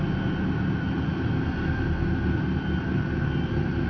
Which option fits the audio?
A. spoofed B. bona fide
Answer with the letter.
B